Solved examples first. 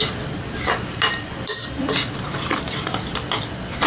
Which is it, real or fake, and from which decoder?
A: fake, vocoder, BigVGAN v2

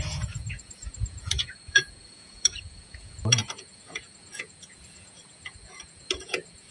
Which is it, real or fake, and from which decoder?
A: fake, vocoder, Vocos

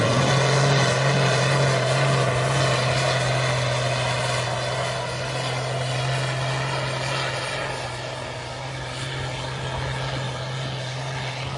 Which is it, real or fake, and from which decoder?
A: real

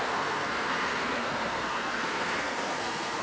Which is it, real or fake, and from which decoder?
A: fake, codec, SNAC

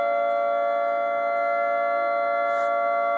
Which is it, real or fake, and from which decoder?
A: real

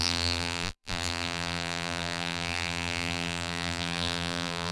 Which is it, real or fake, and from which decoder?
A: fake, vocoder, BigVGAN v2